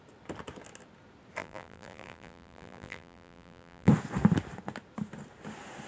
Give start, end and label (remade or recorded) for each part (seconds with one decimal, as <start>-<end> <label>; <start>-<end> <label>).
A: 0.0-1.4 recorded; 1.4-3.9 remade; 3.9-5.9 recorded